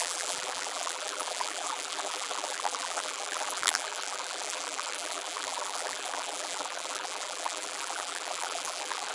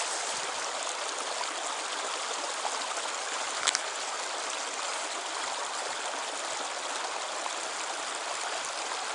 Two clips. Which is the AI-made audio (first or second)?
first